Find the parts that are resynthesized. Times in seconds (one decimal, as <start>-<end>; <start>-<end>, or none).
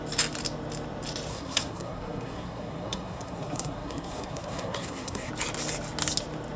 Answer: 1.3-5.3